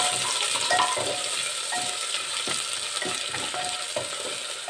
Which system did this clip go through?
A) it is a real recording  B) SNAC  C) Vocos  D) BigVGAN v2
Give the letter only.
A